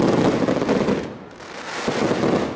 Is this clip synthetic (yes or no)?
no